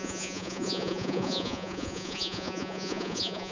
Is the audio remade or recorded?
remade